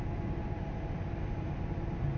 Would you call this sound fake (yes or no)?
no